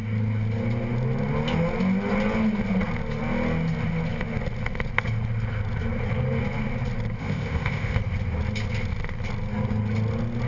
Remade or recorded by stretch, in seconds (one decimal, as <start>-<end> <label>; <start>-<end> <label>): 0.0-7.2 recorded; 7.2-8.0 remade; 8.0-10.5 recorded